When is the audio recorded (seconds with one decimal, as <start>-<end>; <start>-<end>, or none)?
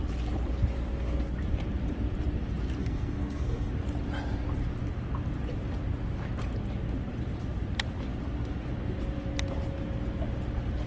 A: 0.0-2.8; 3.7-10.9